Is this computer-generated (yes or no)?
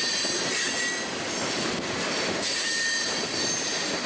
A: no